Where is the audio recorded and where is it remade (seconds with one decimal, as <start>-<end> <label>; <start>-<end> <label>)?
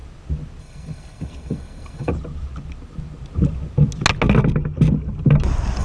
0.0-0.6 recorded; 0.6-2.1 remade; 2.1-5.8 recorded